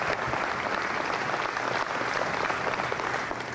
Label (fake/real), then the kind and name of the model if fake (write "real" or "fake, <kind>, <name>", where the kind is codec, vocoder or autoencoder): real